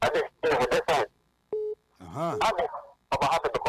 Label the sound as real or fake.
fake